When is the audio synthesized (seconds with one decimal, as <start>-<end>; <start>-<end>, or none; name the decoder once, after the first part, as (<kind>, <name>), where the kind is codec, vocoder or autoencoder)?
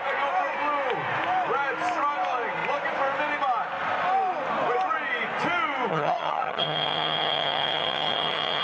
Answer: 5.9-8.6 (vocoder, HiFi-GAN)